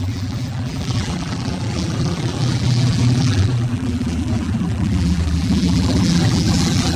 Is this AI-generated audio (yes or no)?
yes